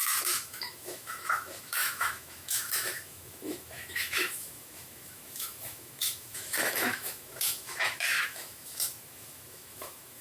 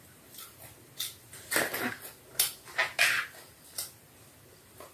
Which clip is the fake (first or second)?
first